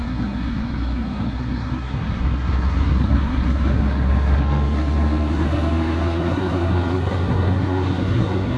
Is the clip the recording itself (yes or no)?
no